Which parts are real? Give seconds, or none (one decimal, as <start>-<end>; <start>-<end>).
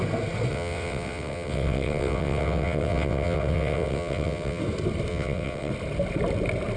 0.0-0.5; 4.6-5.1; 5.7-6.8